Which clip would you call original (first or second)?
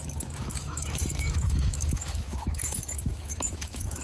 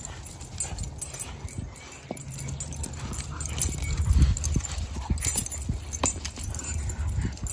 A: second